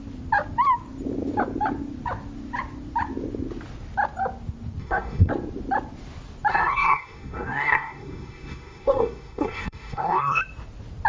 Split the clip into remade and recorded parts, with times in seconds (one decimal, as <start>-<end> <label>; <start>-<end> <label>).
0.0-4.8 recorded; 4.8-5.3 remade; 5.3-6.5 recorded; 6.5-10.4 remade; 10.4-11.1 recorded